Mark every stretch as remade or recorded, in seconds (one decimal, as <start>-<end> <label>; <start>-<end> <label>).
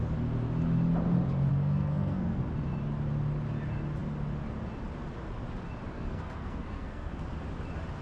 0.0-1.5 recorded; 1.5-2.4 remade; 2.4-5.9 recorded; 5.9-7.2 remade; 7.2-8.0 recorded